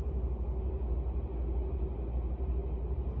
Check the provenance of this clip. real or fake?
real